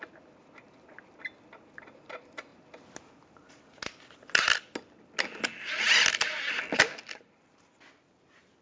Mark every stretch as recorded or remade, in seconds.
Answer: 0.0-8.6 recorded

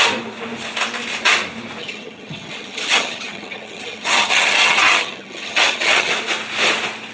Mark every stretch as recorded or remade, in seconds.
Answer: 0.0-1.8 recorded; 1.8-6.1 remade; 6.1-7.1 recorded

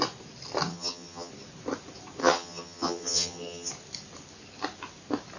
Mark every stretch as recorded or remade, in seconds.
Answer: 0.0-0.7 recorded; 0.7-1.3 remade; 1.3-2.2 recorded; 2.2-3.7 remade; 3.7-5.4 recorded

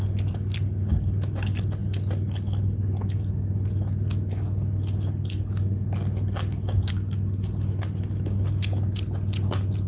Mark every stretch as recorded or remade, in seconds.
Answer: 0.0-9.9 recorded

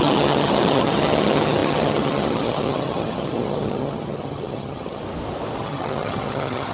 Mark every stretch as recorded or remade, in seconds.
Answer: 0.0-5.0 remade; 5.0-5.6 recorded; 5.6-6.7 remade

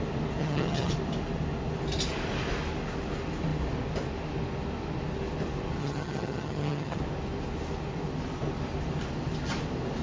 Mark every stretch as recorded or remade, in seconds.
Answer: 0.0-0.4 recorded; 0.4-0.9 remade; 0.9-5.8 recorded; 5.8-7.0 remade; 7.0-10.0 recorded